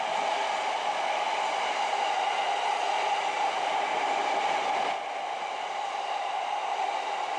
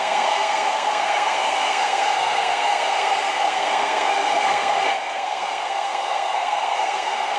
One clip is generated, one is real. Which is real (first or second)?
first